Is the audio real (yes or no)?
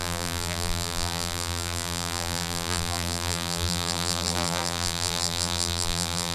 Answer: no